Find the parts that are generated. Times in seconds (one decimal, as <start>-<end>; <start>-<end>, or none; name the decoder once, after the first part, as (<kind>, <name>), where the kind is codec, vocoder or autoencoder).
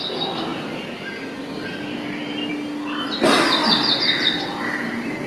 none